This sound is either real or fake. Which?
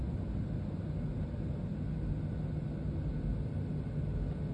real